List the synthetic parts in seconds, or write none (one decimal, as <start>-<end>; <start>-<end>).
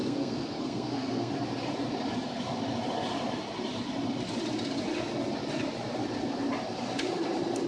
0.0-1.3